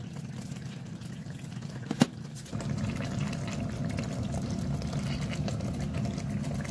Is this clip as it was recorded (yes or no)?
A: yes